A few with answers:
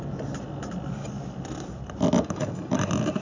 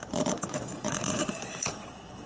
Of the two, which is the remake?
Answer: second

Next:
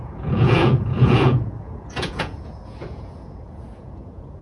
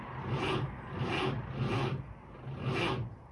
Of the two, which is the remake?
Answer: first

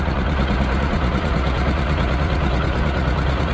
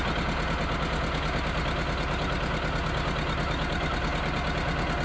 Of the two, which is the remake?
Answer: first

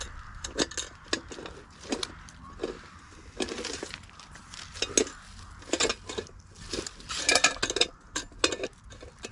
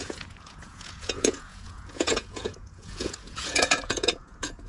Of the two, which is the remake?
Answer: second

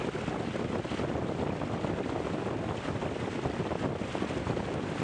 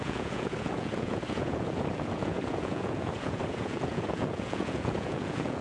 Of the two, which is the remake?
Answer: second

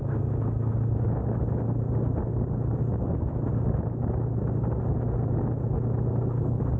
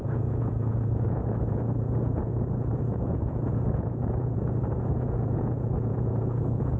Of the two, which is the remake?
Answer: second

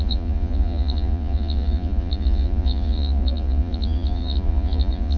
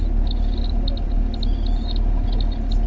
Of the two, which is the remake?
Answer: first